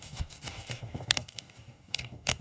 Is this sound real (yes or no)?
no